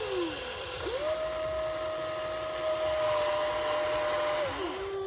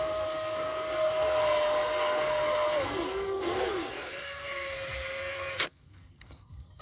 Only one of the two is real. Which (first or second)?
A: first